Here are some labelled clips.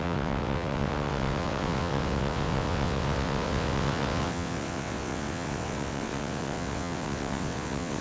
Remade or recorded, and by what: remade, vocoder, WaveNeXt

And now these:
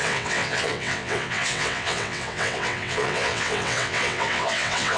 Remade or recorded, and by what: remade, vocoder, WaveNeXt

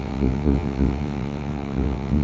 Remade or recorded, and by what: remade, vocoder, WaveNeXt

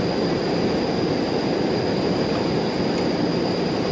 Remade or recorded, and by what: recorded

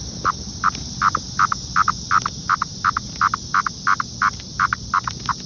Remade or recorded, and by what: recorded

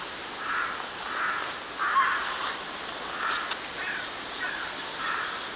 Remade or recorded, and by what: recorded